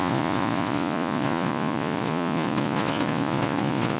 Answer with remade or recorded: remade